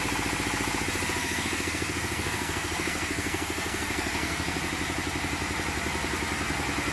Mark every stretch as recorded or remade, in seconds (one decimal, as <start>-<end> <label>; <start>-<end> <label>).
0.0-1.2 recorded; 1.2-4.6 remade; 4.6-6.9 recorded